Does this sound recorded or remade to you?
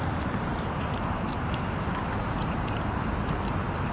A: remade